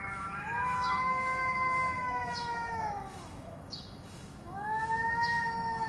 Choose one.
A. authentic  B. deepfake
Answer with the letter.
B